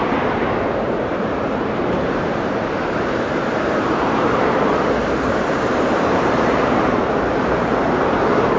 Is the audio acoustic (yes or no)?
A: no